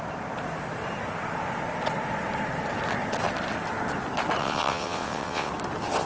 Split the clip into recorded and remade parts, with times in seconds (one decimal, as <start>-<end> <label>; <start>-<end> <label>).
0.0-4.4 recorded; 4.4-5.5 remade; 5.5-6.1 recorded